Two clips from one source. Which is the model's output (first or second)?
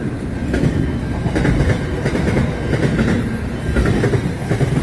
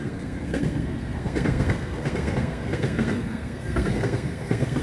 second